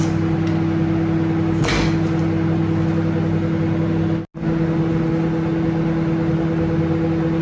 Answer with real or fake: real